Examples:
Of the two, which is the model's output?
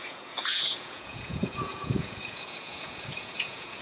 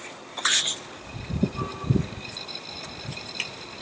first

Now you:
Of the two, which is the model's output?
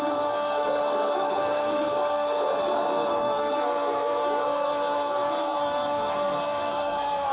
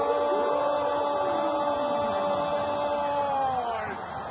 first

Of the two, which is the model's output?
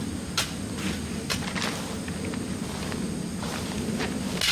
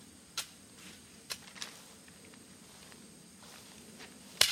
second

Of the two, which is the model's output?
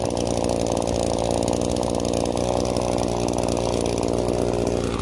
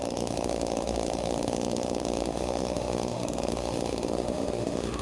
second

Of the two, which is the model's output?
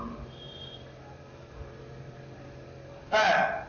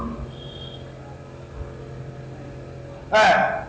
first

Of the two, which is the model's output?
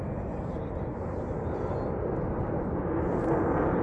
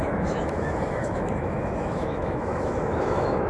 second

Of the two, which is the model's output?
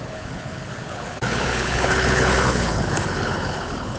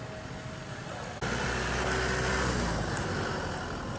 first